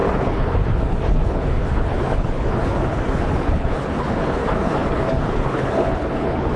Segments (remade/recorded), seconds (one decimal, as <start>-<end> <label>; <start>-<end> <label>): 0.0-6.6 remade